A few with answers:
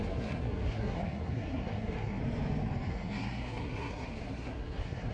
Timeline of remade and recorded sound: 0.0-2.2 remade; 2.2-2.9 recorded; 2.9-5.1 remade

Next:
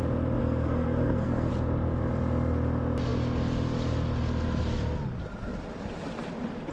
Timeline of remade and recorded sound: 0.0-0.4 recorded; 0.4-1.5 remade; 1.5-6.7 recorded

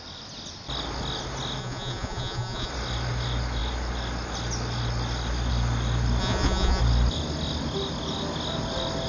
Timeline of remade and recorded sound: 0.0-1.6 recorded; 1.6-2.7 remade; 2.7-6.2 recorded; 6.2-6.8 remade; 6.8-9.1 recorded

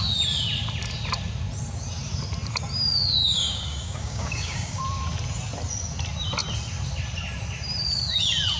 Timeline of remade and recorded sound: 0.0-3.2 recorded; 3.2-4.8 remade; 4.8-8.6 recorded

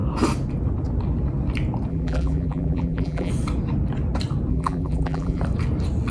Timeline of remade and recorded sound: 0.0-1.9 recorded; 1.9-3.3 remade; 3.3-4.5 recorded; 4.5-5.4 remade; 5.4-6.1 recorded